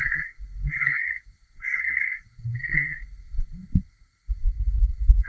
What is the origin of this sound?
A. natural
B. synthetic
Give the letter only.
B